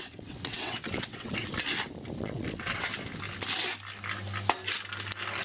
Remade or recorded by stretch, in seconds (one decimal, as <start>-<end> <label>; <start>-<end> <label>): 0.0-1.5 remade; 1.5-2.2 recorded; 2.2-2.9 remade; 2.9-5.4 recorded